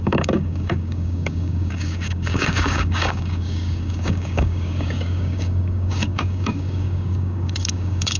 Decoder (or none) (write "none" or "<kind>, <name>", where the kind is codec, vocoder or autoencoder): codec, DAC